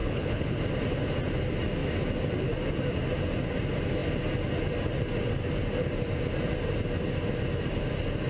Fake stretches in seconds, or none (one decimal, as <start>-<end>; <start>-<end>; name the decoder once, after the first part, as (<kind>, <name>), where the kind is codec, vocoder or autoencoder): 0.0-0.6 (codec, HILCodec)